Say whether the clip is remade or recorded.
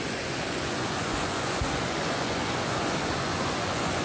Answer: remade